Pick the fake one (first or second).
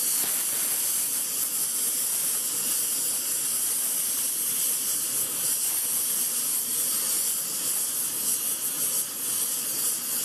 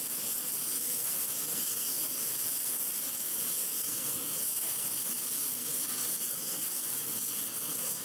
second